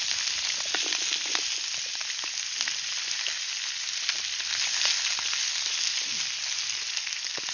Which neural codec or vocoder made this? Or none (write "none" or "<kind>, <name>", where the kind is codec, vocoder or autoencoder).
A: none